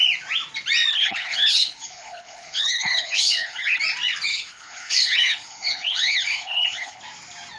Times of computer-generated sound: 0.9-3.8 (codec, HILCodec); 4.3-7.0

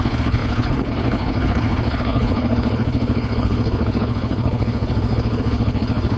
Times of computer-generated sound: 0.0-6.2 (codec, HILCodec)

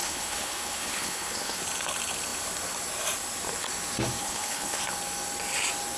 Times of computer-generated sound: 0.0-1.6 (codec, HILCodec); 4.2-4.8